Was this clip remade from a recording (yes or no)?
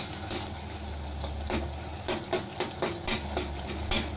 no